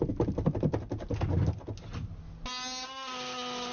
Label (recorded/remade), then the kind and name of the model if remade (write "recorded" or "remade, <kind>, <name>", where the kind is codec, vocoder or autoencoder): recorded